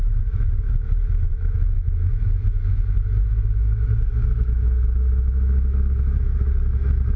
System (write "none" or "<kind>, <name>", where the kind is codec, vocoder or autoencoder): autoencoder, DAC-VAE